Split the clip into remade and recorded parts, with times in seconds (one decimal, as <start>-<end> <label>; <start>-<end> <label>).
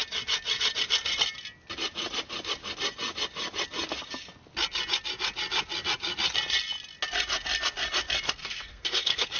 0.0-8.4 recorded; 8.4-9.4 remade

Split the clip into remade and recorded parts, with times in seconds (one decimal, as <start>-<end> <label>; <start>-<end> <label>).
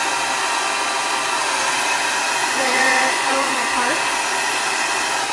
0.0-2.4 recorded; 2.4-3.6 remade; 3.6-5.3 recorded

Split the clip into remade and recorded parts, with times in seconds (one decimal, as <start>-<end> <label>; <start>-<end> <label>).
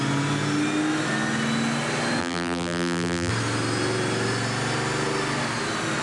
0.0-2.2 recorded; 2.2-3.3 remade; 3.3-6.0 recorded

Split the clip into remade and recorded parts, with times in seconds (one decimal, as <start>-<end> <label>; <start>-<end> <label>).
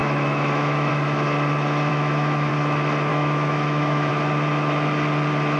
0.0-0.9 remade; 0.9-1.9 recorded; 1.9-2.5 remade; 2.5-3.1 recorded; 3.1-4.1 remade; 4.1-5.6 recorded